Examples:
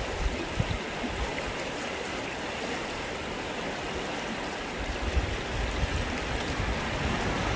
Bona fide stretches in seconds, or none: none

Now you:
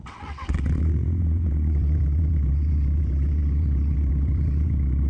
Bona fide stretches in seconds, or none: none

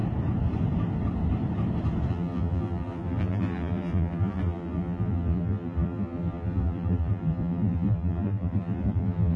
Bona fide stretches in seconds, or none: 0.0-2.1

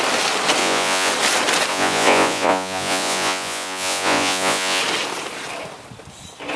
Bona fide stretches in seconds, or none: 0.0-0.6; 1.1-1.7; 4.8-6.6

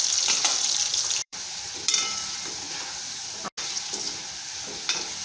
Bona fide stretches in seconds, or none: 0.0-0.9; 2.8-5.2

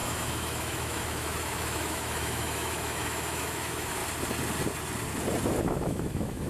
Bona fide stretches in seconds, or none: 4.0-5.6

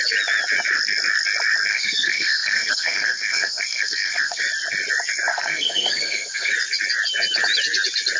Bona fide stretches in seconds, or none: 0.0-1.7; 4.4-5.3; 6.5-8.2

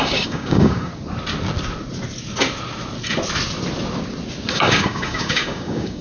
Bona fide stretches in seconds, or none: 0.9-4.5